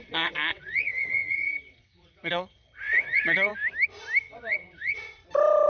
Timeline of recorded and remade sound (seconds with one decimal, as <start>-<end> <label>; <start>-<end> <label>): 0.0-3.5 remade; 3.5-4.2 recorded; 4.2-5.2 remade; 5.2-5.7 recorded